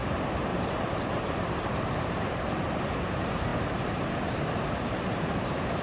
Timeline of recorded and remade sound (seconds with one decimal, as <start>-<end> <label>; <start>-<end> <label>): 0.0-5.8 remade